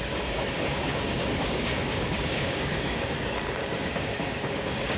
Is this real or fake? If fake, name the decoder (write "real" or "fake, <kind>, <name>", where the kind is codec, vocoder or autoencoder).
fake, codec, DAC